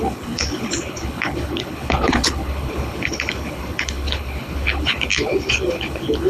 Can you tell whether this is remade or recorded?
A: remade